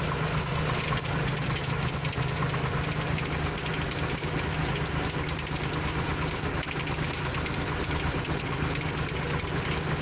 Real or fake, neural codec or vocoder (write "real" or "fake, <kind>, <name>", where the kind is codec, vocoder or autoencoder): real